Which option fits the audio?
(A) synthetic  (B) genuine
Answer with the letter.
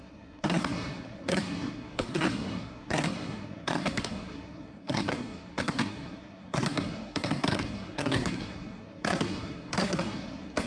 A